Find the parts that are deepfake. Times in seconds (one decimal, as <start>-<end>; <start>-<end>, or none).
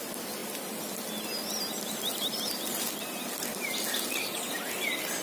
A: 0.4-1.3